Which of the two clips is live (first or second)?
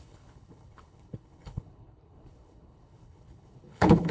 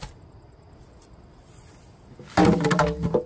second